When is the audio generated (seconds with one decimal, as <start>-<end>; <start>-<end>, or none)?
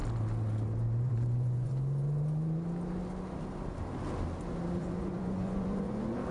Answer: 1.1-1.7; 4.7-6.3